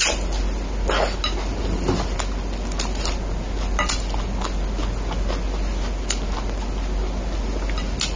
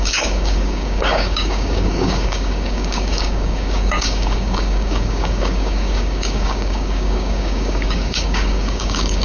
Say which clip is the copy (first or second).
second